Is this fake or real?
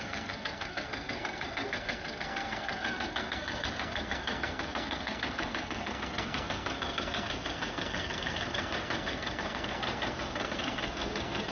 fake